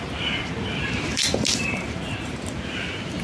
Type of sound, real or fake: fake